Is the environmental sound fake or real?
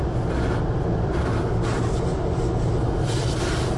real